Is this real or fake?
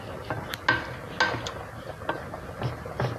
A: real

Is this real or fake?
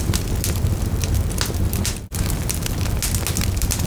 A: real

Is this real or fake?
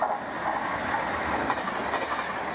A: real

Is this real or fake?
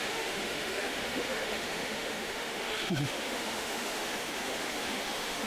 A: fake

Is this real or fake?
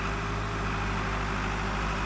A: real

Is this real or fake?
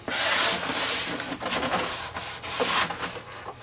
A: real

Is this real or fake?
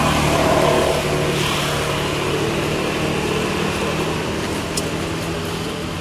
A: real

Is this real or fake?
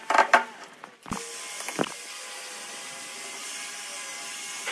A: real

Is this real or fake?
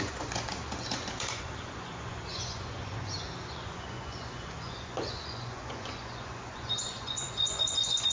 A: fake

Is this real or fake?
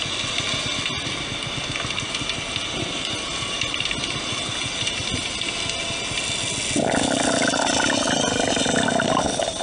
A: real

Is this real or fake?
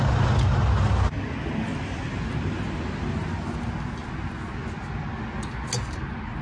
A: real